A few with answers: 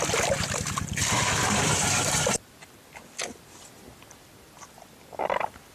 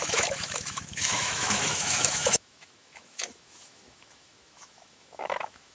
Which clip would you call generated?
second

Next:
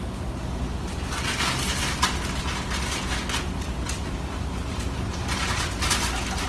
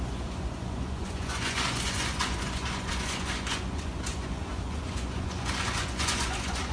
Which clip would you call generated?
second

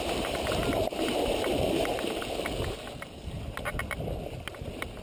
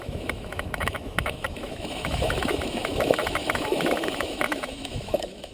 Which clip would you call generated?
second